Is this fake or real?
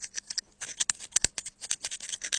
real